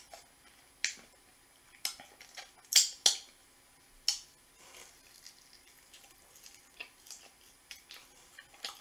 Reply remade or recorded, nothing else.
recorded